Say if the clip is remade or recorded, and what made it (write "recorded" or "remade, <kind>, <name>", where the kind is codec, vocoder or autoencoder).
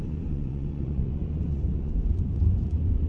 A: remade, vocoder, Vocos